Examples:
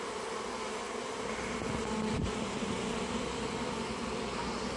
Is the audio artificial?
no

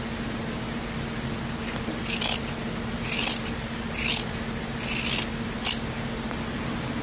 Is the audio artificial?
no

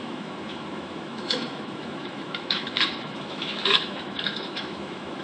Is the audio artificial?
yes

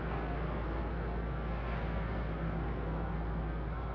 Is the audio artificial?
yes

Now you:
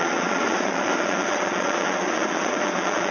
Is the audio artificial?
yes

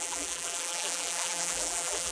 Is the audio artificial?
yes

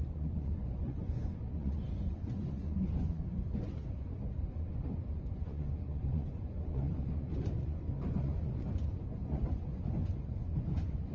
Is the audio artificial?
yes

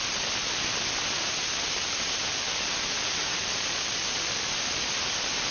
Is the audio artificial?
no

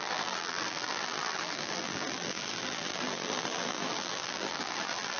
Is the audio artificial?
yes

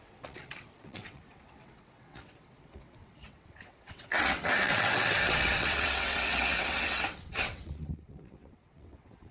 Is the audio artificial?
yes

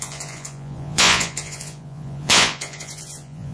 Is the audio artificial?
yes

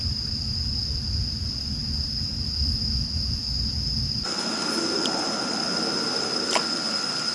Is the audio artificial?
no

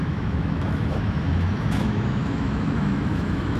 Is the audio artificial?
yes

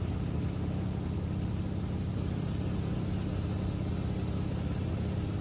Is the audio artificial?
no